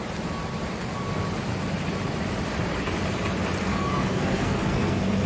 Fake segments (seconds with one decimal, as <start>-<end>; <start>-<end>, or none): 3.7-5.3